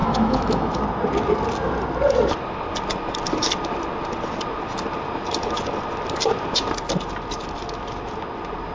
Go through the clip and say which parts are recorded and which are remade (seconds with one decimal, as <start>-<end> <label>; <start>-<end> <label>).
0.0-0.8 remade; 0.8-8.7 recorded